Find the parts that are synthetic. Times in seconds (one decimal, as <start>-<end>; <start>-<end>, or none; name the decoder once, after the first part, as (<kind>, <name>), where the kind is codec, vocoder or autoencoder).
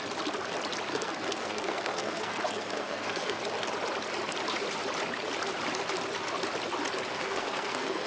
0.9-3.4 (codec, SNAC); 7.1-8.1